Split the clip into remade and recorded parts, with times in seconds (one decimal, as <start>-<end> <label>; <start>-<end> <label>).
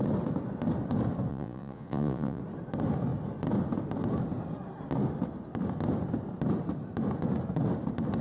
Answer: 0.0-1.3 recorded; 1.3-2.4 remade; 2.4-8.2 recorded